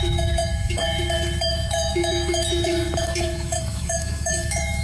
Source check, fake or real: fake